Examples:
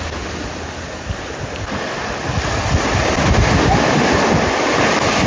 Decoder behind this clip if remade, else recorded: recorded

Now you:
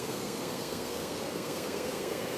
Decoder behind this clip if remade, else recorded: remade, codec, SNAC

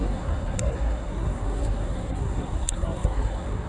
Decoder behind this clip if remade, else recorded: remade, codec, SNAC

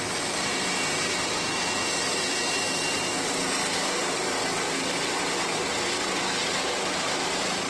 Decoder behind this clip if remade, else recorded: recorded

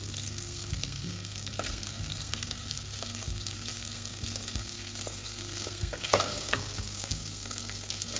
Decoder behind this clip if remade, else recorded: remade, codec, SNAC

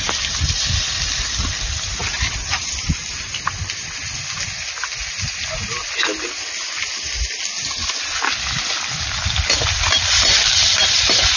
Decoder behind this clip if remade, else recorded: recorded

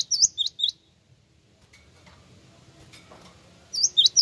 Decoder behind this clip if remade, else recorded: recorded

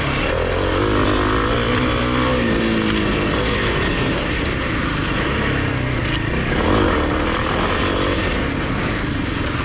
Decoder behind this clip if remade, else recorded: recorded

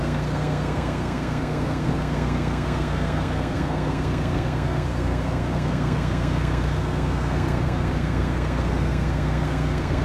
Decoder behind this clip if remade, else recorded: remade, codec, SNAC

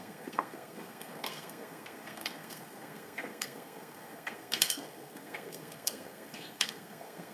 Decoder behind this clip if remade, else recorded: remade, codec, SNAC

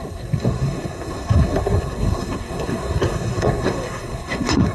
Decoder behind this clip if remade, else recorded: remade, codec, SNAC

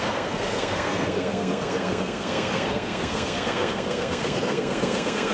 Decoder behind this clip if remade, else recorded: remade, codec, SNAC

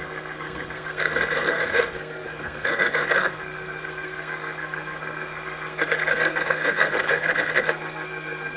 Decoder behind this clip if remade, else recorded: remade, codec, SNAC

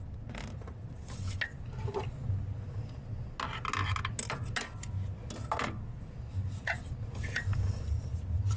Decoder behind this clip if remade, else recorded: recorded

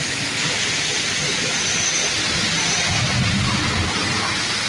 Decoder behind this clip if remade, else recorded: recorded